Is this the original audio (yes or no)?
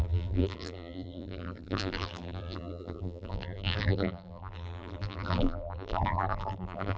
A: no